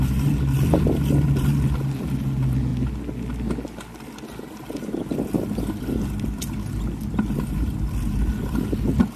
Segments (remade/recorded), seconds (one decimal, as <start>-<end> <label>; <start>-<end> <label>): 0.0-9.2 recorded